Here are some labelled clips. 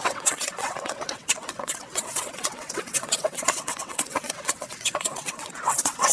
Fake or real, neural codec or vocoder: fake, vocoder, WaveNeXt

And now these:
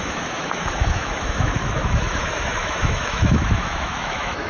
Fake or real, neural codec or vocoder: fake, autoencoder, DAC-VAE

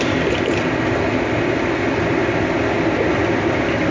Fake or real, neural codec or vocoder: real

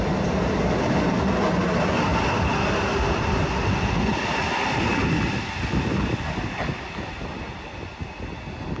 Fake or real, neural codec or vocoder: real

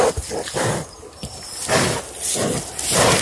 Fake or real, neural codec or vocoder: real